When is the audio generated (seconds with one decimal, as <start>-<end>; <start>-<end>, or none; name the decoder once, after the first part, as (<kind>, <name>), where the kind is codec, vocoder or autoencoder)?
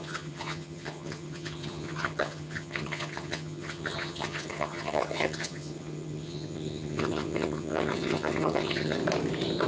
0.0-9.0 (vocoder, HiFi-GAN)